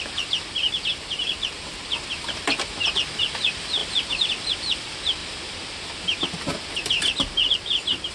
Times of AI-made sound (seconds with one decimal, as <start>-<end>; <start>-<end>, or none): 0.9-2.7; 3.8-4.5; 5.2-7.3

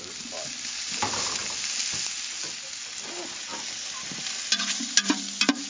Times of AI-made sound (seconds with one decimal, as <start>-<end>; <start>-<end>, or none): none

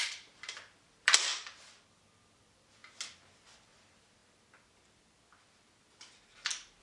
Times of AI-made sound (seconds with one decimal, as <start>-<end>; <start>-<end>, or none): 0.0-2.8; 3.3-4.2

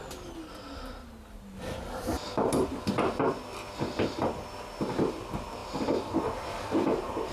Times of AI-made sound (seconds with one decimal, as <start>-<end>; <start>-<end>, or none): none

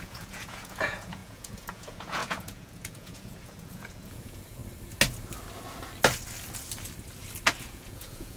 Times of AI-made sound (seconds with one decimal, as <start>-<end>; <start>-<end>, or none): 0.0-4.6; 7.6-8.4